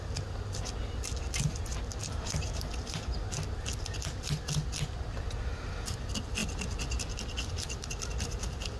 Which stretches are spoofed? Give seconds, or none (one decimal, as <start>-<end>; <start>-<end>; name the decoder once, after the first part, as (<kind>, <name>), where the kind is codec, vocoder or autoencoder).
2.0-3.2 (vocoder, BigVGAN v2); 5.5-6.0